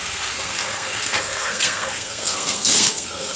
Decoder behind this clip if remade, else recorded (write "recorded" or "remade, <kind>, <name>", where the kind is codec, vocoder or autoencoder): remade, codec, SNAC